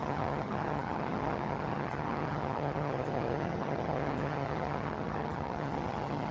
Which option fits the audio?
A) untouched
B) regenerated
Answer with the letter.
B